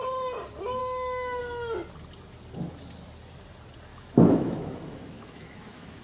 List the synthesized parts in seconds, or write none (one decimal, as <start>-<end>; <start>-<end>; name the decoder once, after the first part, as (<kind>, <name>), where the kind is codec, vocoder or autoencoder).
0.8-1.4 (autoencoder, DAC-VAE); 3.9-6.0